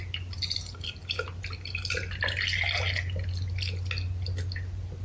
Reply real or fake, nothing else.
real